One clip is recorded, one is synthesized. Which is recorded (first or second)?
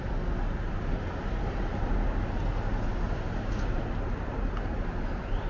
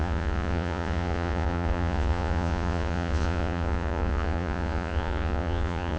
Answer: first